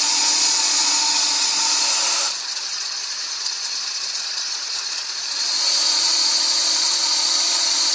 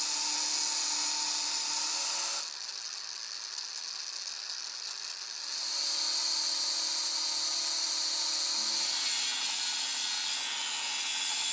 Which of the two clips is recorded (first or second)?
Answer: second